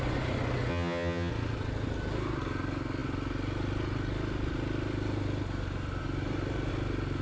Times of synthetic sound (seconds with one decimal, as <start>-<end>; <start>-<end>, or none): 0.7-1.3